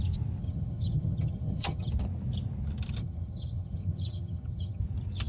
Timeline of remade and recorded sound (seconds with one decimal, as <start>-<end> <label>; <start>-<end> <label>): 0.0-0.4 recorded; 0.4-1.9 remade; 1.9-3.0 recorded; 3.0-4.8 remade; 4.8-5.3 recorded